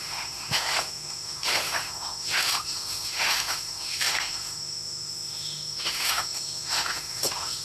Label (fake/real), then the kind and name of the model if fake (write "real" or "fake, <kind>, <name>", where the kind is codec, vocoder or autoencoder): fake, autoencoder, DAC-VAE